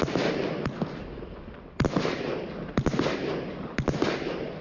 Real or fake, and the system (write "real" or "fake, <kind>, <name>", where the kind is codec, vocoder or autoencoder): real